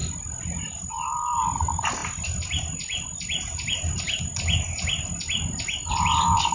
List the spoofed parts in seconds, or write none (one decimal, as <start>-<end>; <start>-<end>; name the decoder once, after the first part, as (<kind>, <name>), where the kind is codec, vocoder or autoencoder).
none